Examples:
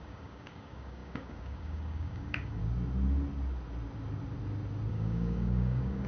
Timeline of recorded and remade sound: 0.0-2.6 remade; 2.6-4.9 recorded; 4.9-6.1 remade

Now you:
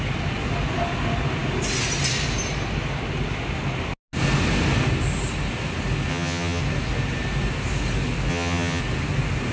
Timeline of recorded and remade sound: 0.0-6.1 recorded; 6.1-6.6 remade; 6.6-8.3 recorded; 8.3-8.8 remade; 8.8-9.5 recorded

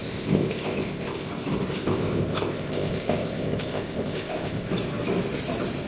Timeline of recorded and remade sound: 0.0-1.3 remade; 1.3-1.8 recorded; 1.8-4.7 remade; 4.7-5.9 recorded

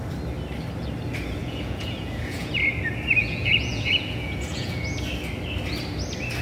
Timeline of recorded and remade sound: 0.0-1.4 recorded; 1.4-2.5 remade; 2.5-3.2 recorded; 3.2-4.8 remade; 4.8-6.4 recorded